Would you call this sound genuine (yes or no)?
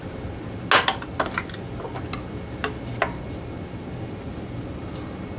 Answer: yes